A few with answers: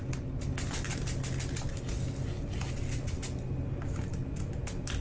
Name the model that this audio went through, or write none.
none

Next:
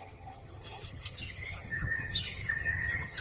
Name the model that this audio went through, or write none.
vocoder, HiFi-GAN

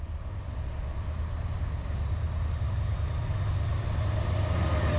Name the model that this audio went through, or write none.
none